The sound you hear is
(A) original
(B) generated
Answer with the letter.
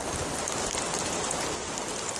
A